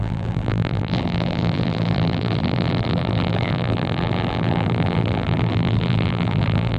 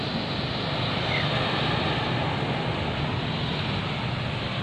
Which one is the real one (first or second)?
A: second